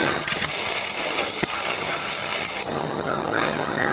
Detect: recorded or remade remade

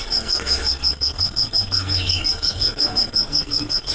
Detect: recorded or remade remade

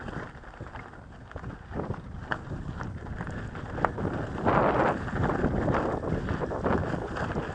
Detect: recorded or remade recorded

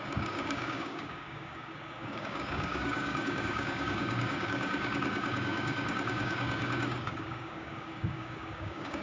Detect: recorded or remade remade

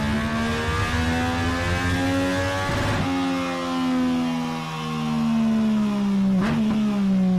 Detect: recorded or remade recorded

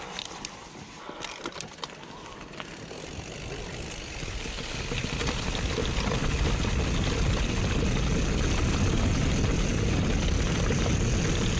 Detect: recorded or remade recorded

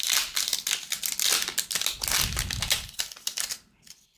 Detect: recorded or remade recorded